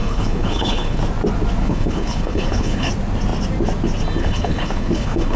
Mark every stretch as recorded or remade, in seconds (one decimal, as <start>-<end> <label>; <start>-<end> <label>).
0.0-1.0 remade; 1.0-1.6 recorded; 1.6-2.9 remade; 2.9-4.2 recorded; 4.2-5.4 remade